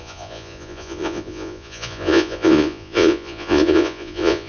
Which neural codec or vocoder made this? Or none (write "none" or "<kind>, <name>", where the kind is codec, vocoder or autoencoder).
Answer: vocoder, Vocos